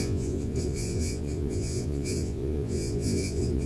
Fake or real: fake